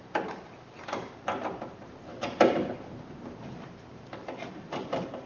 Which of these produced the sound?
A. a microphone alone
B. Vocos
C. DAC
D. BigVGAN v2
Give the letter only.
D